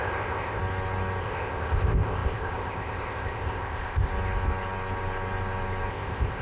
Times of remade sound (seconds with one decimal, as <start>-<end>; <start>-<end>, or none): 0.0-0.6; 1.2-4.1; 5.9-6.4